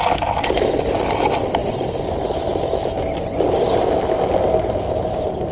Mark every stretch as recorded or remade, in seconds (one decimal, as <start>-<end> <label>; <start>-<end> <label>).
0.0-5.5 recorded